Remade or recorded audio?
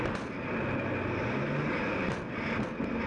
recorded